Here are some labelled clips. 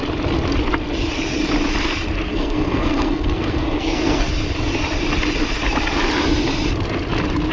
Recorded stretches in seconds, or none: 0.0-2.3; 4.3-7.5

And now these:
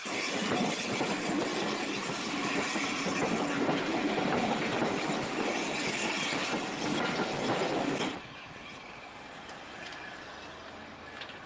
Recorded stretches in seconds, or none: 4.8-8.3; 10.3-11.5

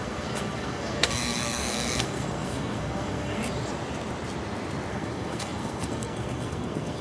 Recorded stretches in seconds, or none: 3.4-4.9

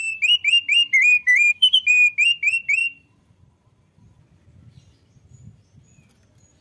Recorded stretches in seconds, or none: 0.0-1.1; 1.9-2.8; 4.2-6.6

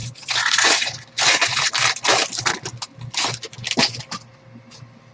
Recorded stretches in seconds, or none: 1.7-5.1